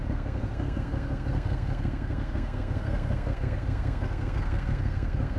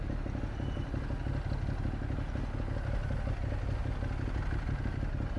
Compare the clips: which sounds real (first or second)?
second